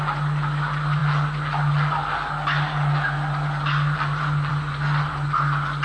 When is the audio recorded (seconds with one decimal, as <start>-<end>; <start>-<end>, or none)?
0.0-5.8